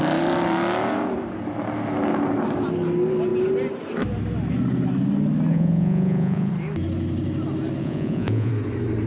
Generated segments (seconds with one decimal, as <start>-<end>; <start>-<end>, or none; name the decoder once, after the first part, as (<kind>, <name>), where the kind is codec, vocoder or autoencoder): 5.5-6.5 (vocoder, Vocos); 7.8-8.5